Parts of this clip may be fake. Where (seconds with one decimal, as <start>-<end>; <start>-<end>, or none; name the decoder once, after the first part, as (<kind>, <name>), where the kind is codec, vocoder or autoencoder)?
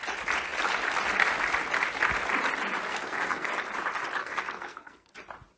2.9-3.5 (codec, SNAC); 4.2-5.1